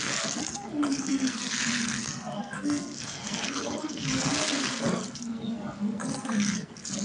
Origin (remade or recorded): remade